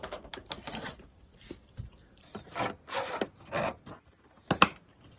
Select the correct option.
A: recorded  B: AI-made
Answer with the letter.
A